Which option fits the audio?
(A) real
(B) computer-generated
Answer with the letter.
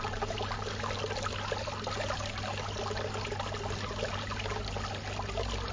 A